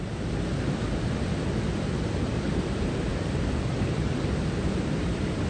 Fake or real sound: real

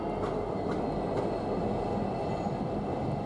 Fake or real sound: real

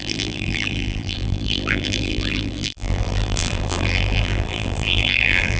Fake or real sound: fake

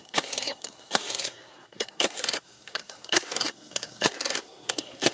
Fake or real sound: fake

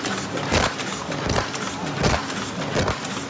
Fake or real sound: real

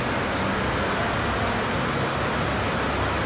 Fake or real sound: real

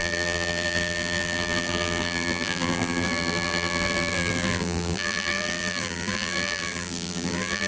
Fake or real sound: fake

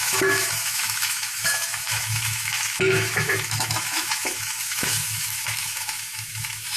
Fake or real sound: fake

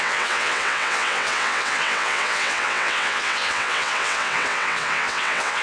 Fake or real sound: fake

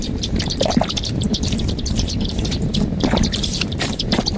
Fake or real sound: fake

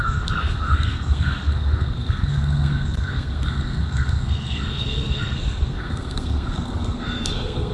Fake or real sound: fake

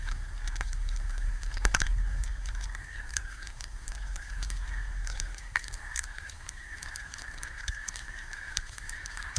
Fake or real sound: fake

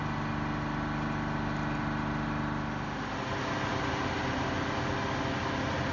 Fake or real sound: real